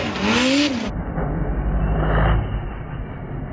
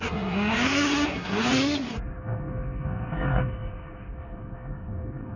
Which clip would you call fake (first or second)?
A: second